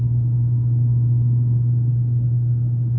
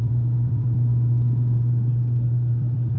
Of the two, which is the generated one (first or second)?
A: second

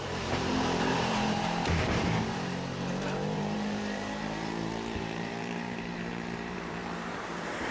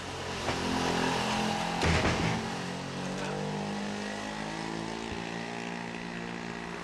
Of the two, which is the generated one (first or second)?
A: first